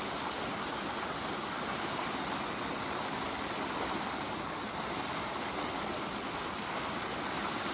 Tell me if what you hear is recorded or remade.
recorded